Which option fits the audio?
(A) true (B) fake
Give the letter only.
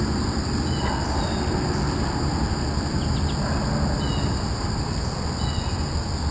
A